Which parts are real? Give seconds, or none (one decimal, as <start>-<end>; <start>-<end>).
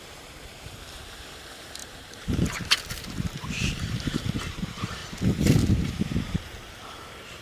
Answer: 5.0-5.7